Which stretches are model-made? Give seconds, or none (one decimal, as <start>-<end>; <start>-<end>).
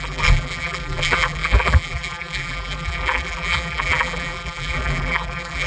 0.0-5.7